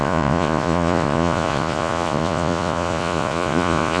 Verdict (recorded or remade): remade